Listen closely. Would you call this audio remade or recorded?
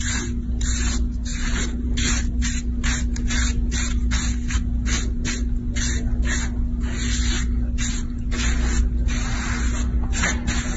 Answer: recorded